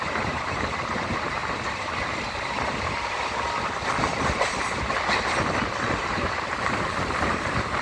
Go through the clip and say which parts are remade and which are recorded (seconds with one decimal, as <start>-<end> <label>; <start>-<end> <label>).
0.0-1.4 remade; 1.4-6.0 recorded; 6.0-7.8 remade